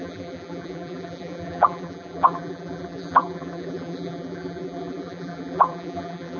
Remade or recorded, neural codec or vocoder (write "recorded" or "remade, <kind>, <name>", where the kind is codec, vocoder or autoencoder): remade, vocoder, BigVGAN v2